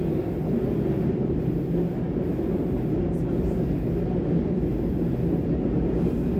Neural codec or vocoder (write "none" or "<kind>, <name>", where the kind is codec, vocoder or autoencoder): none